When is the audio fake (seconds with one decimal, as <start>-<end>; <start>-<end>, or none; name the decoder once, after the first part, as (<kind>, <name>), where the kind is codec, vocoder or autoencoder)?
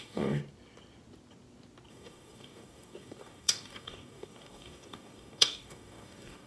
0.0-0.4 (codec, DAC); 1.9-6.5